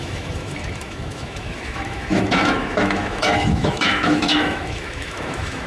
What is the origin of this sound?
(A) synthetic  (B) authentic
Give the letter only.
A